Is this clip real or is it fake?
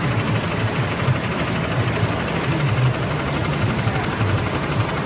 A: real